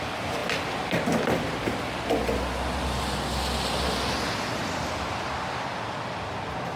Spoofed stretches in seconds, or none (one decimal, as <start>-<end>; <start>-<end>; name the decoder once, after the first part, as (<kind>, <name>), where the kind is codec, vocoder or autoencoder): none